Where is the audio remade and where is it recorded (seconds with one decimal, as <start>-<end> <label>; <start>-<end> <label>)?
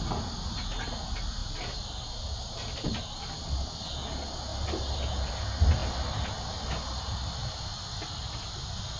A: 0.0-1.4 recorded; 1.4-3.2 remade; 3.2-4.5 recorded; 4.5-5.3 remade; 5.3-9.0 recorded